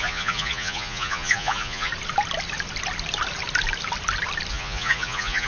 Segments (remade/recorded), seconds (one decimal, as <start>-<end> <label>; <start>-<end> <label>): 0.0-1.9 remade; 1.9-4.5 recorded; 4.5-5.5 remade